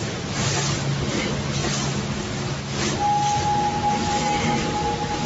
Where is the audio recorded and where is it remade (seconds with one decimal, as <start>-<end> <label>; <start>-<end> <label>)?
0.0-5.3 recorded

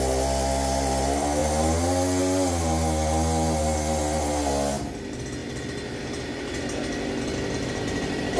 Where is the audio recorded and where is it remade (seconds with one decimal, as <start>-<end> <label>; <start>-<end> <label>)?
0.0-8.4 recorded